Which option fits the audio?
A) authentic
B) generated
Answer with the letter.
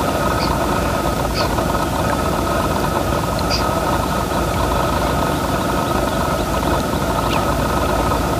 B